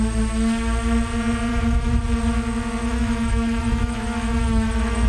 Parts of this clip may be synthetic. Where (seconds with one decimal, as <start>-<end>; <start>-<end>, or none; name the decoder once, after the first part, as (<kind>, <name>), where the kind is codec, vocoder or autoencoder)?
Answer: 1.5-2.0 (autoencoder, DAC-VAE); 2.8-5.1